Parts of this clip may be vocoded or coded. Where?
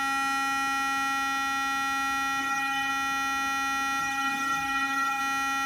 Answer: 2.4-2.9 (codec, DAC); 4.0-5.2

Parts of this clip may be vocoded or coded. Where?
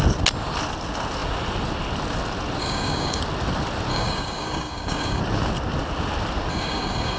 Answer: 2.6-3.2 (codec, DAC); 3.9-5.2; 6.5-7.2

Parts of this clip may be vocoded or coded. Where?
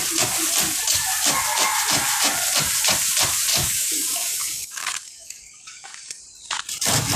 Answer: 3.5-6.2 (codec, DAC)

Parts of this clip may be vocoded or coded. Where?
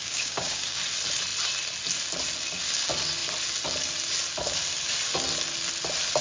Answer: 0.0-0.8 (codec, DAC)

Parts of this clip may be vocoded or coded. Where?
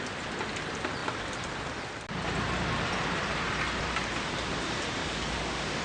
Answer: 5.0-5.8 (codec, DAC)